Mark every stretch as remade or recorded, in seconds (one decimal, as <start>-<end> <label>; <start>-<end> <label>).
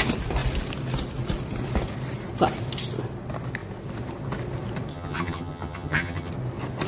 0.0-4.9 recorded; 4.9-6.3 remade; 6.3-6.9 recorded